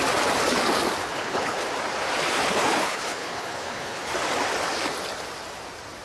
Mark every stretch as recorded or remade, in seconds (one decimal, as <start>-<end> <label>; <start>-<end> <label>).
0.0-1.0 recorded; 1.0-1.7 remade; 1.7-2.4 recorded; 2.4-4.1 remade; 4.1-6.0 recorded